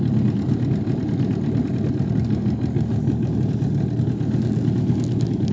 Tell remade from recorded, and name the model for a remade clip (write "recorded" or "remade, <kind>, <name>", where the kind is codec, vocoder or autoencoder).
recorded